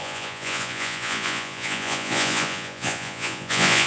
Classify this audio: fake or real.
fake